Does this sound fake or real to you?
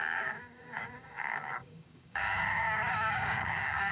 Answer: fake